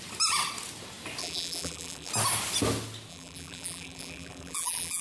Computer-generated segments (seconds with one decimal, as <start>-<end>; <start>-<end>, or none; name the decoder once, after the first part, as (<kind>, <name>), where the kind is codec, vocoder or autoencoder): 1.2-2.1 (vocoder, BigVGAN v2); 3.1-5.0